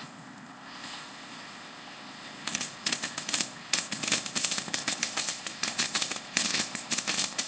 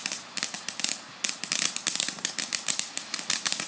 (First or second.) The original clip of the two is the second